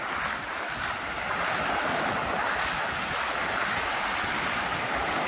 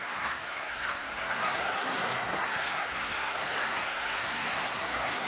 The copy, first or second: second